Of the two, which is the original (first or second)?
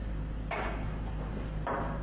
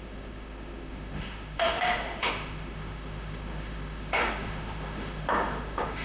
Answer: first